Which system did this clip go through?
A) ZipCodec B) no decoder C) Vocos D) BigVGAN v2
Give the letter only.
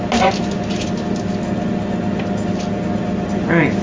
B